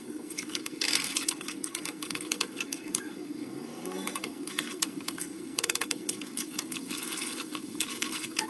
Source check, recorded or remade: remade